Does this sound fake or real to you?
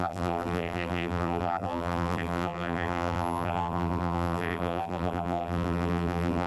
fake